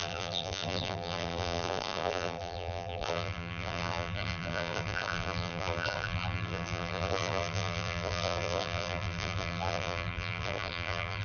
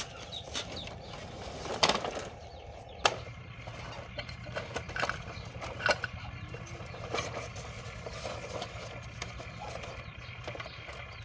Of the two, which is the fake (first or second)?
first